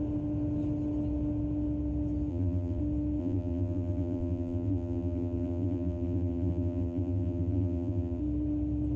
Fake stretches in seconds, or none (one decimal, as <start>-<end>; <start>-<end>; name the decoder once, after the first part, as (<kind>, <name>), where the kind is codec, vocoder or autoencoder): 2.3-2.8 (vocoder, BigVGAN v2); 3.2-8.2

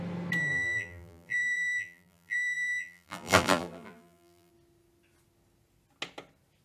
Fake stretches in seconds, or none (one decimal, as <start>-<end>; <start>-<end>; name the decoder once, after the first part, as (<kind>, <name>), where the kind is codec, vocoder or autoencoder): 0.5-4.5 (vocoder, BigVGAN v2)

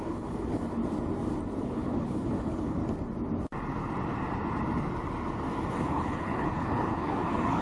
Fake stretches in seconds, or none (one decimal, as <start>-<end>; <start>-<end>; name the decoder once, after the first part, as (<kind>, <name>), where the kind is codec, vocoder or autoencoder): 0.0-0.8 (codec, HILCodec); 1.6-2.8; 5.7-7.6